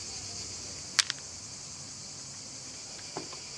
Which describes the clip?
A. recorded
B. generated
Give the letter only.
A